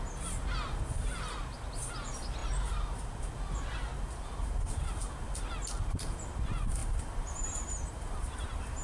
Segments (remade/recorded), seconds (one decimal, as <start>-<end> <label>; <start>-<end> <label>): 0.0-2.4 recorded; 2.4-3.2 remade; 3.2-3.9 recorded; 3.9-5.1 remade; 5.1-6.8 recorded; 6.8-8.8 remade